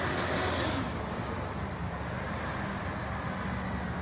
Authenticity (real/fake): real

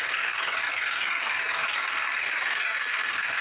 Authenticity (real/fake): fake